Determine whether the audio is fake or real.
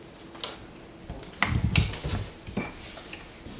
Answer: real